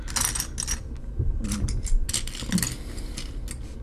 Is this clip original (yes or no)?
yes